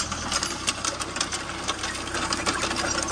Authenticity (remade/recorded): recorded